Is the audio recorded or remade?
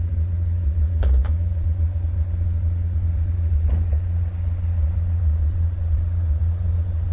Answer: remade